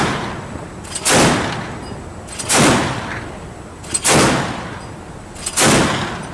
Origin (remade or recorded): recorded